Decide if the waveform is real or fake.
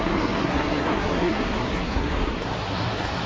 fake